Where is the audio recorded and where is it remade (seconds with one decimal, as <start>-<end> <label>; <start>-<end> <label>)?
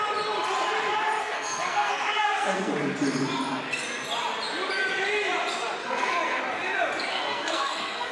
0.0-1.2 recorded; 1.2-2.7 remade; 2.7-5.8 recorded; 5.8-6.4 remade; 6.4-7.1 recorded; 7.1-8.1 remade